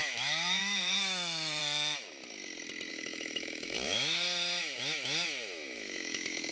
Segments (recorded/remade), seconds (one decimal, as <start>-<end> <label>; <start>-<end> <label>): 0.0-1.6 remade; 1.6-2.9 recorded; 2.9-6.5 remade

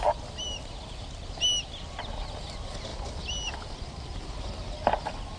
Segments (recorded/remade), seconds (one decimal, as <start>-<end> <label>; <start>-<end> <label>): 0.0-5.4 recorded

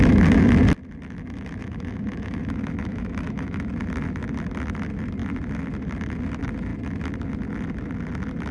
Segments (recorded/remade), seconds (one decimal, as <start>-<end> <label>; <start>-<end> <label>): 0.0-1.6 recorded; 1.6-3.7 remade; 3.7-8.5 recorded

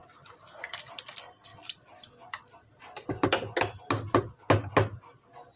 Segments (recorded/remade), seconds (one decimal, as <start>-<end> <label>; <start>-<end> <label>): 0.0-0.8 remade; 0.8-1.5 recorded; 1.5-3.8 remade; 3.8-5.6 recorded

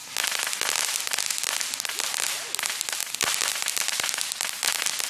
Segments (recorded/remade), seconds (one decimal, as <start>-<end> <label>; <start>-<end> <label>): 0.0-5.1 recorded

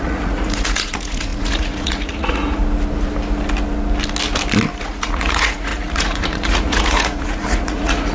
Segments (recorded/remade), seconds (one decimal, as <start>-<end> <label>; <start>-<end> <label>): 0.0-2.6 remade; 2.6-4.8 recorded; 4.8-8.1 remade